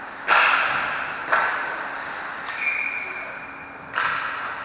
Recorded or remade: recorded